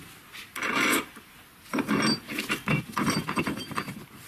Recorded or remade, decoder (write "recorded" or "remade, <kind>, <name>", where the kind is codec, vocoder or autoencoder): recorded